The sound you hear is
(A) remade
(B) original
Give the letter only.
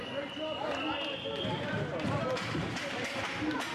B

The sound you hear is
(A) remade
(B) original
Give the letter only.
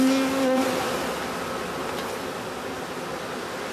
B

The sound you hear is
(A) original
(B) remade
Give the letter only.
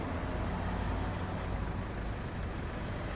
A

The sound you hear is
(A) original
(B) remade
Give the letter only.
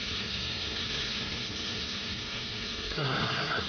B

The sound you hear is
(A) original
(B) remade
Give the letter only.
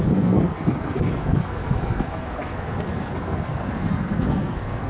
B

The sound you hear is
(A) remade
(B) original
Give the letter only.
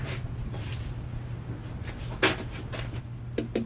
B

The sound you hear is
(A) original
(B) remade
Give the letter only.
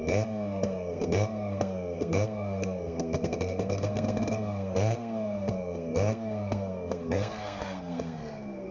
B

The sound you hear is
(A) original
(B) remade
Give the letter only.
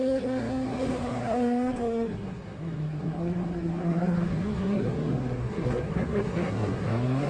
B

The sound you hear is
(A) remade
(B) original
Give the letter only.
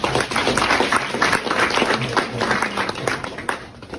B